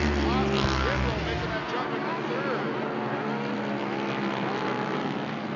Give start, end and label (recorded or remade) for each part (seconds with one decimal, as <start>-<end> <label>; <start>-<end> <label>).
0.0-5.6 recorded